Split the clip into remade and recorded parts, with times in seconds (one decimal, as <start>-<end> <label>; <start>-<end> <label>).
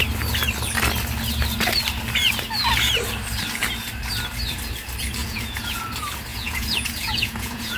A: 0.0-5.2 recorded; 5.2-5.8 remade; 5.8-6.3 recorded; 6.3-7.8 remade